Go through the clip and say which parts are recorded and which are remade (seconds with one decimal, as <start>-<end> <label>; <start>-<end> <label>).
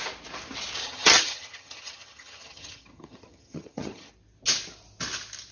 0.0-0.8 recorded; 0.8-4.1 remade; 4.1-5.5 recorded